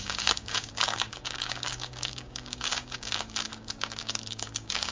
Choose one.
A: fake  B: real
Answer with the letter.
A